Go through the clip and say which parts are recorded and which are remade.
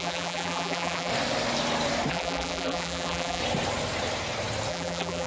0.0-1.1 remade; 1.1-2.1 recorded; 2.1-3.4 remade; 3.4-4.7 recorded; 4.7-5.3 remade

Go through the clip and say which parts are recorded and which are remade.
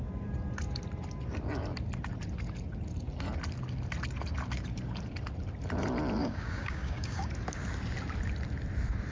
0.0-6.2 recorded; 6.2-7.3 remade; 7.3-9.1 recorded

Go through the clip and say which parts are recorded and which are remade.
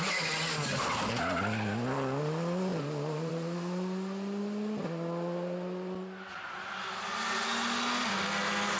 0.0-8.8 recorded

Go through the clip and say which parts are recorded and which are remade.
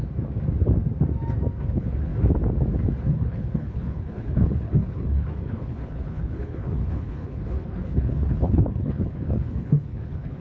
0.0-1.7 recorded; 1.7-2.1 remade; 2.1-3.1 recorded; 3.1-10.4 remade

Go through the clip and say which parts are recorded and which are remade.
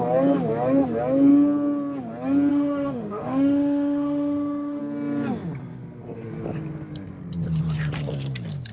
0.0-2.5 recorded; 2.5-4.8 remade; 4.8-8.7 recorded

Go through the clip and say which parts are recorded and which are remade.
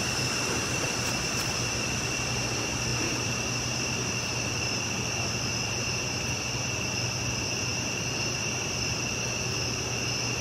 0.0-10.4 recorded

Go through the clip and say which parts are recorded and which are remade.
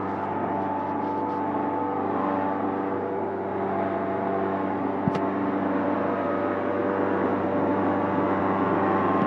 0.0-9.3 recorded